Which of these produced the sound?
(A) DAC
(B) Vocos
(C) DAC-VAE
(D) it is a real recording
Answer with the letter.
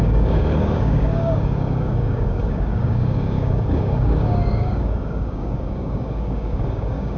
A